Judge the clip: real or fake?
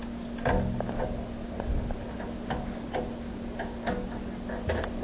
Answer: real